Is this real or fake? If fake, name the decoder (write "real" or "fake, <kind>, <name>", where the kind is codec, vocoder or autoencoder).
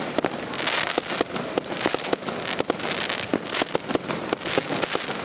real